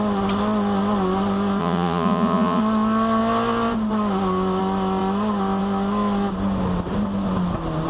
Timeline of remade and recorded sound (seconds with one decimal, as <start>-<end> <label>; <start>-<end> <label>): 0.0-1.6 recorded; 1.6-2.6 remade; 2.6-7.9 recorded